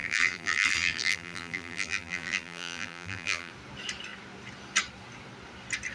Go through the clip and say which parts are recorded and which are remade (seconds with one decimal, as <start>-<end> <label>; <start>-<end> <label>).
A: 0.0-3.5 remade; 3.5-5.9 recorded